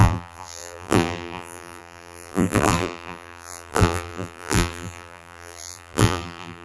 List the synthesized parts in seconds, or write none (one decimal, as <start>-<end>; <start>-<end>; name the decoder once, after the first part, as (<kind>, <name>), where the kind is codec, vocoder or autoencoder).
0.0-6.6 (vocoder, BigVGAN v2)